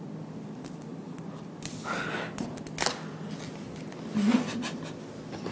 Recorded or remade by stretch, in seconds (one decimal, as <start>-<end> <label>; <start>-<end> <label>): 0.0-5.5 recorded